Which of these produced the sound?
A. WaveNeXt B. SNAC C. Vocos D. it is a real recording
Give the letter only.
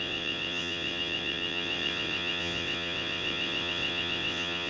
A